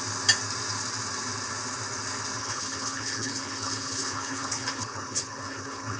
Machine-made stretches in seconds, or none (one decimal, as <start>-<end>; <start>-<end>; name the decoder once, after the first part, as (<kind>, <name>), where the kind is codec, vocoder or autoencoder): 2.4-6.0 (codec, HILCodec)